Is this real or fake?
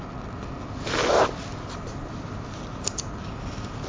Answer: real